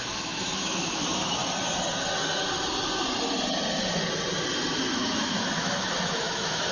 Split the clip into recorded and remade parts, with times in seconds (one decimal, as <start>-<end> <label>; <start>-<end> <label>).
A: 0.0-1.4 remade; 1.4-4.9 recorded; 4.9-6.7 remade